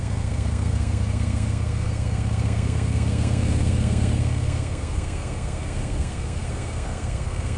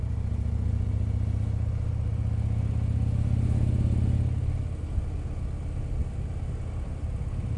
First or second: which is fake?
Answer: first